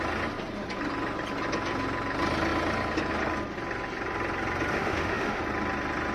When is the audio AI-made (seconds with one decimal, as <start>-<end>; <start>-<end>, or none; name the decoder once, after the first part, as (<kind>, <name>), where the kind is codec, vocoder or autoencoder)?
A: 4.7-5.4 (autoencoder, DAC-VAE)